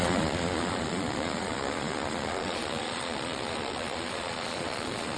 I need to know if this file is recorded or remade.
remade